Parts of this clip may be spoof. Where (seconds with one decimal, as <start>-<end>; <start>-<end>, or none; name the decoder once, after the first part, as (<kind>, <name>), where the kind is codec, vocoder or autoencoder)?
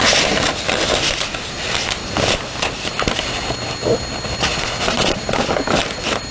none